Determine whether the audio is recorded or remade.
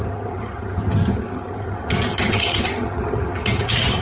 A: remade